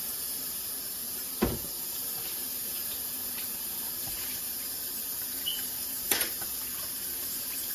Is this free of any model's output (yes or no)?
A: no